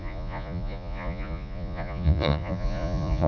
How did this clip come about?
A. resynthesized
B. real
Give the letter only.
A